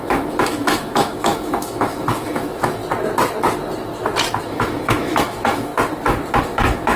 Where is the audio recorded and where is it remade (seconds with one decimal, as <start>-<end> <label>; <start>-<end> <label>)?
0.0-2.8 remade; 2.8-4.4 recorded; 4.4-5.7 remade; 5.7-6.4 recorded; 6.4-7.0 remade